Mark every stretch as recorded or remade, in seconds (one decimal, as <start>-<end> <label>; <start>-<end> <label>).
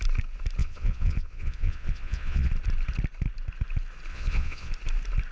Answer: 0.0-0.6 recorded; 0.6-2.5 remade; 2.5-4.1 recorded; 4.1-4.7 remade; 4.7-5.3 recorded